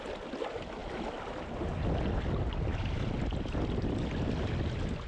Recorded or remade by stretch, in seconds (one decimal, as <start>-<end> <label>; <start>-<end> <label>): 0.0-5.1 recorded

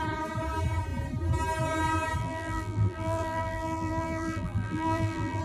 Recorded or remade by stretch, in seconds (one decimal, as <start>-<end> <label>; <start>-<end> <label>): 0.0-2.2 recorded; 2.2-5.4 remade